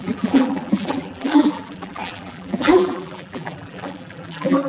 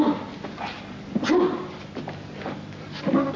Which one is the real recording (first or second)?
second